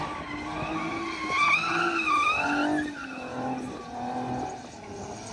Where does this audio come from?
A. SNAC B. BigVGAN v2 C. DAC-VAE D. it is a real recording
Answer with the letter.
D